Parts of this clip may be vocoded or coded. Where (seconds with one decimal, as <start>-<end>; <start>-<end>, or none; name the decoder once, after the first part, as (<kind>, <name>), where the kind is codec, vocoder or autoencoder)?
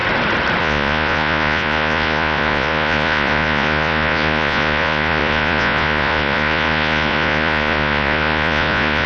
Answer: 0.6-9.1 (vocoder, Vocos)